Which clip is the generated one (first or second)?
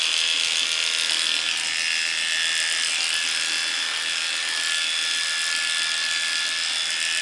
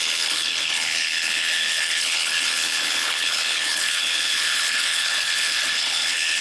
second